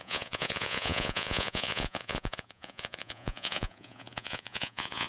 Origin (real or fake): fake